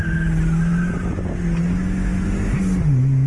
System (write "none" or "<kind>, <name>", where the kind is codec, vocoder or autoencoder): none